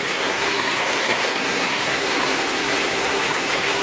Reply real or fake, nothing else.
fake